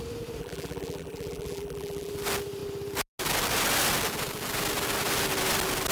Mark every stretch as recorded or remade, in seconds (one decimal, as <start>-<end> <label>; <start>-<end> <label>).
0.0-0.4 recorded; 0.4-2.1 remade; 2.1-5.9 recorded